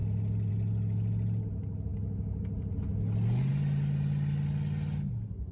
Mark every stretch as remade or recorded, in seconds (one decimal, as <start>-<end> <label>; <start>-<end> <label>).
0.0-5.5 recorded